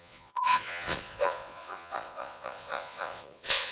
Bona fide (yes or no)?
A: no